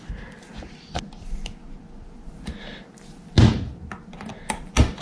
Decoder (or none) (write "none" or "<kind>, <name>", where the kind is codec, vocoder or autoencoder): none